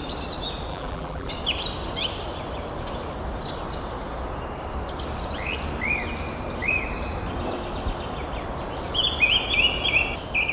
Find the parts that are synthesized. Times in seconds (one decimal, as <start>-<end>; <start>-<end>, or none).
0.7-1.3

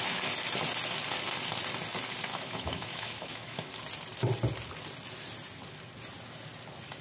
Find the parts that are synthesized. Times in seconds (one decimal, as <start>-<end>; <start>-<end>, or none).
2.3-3.7

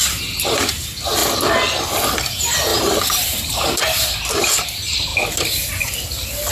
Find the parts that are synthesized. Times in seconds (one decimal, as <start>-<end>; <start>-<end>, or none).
2.7-3.8

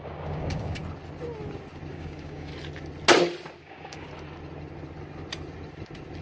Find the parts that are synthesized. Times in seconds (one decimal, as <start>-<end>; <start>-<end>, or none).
0.0-0.8; 1.9-2.5; 3.6-4.1

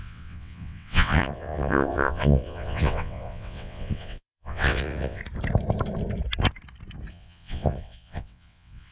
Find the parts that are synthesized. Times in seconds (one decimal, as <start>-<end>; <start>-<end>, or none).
0.0-5.2; 7.1-8.9

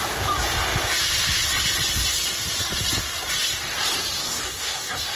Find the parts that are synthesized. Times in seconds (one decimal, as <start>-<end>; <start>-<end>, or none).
4.2-5.2

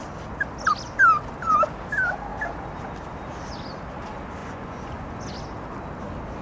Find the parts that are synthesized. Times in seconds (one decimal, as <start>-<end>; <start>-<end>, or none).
4.4-5.3